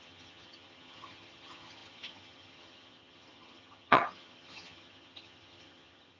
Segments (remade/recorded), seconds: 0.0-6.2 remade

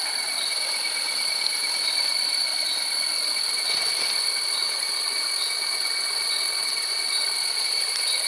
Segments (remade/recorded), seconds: 0.0-6.6 recorded; 6.6-7.1 remade; 7.1-8.3 recorded

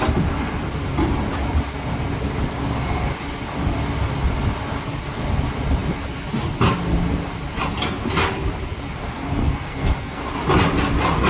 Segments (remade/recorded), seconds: 0.0-9.4 recorded; 9.4-10.2 remade; 10.2-11.3 recorded

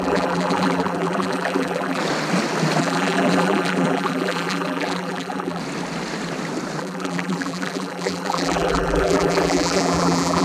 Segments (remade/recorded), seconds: 0.0-2.0 remade; 2.0-2.8 recorded; 2.8-5.6 remade; 5.6-6.8 recorded; 6.8-10.4 remade

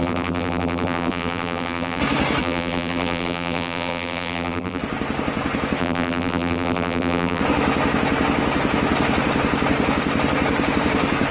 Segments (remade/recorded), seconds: 0.0-2.0 remade; 2.0-2.4 recorded; 2.4-4.8 remade; 4.8-5.8 recorded; 5.8-7.4 remade; 7.4-11.3 recorded

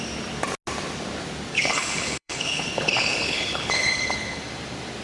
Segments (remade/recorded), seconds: 0.0-1.5 recorded; 1.5-4.4 remade; 4.4-5.0 recorded

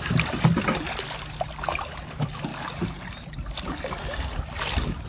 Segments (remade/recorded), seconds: 0.0-5.1 recorded

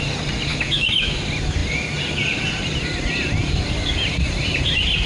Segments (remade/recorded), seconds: 0.0-0.5 recorded; 0.5-1.2 remade; 1.2-5.1 recorded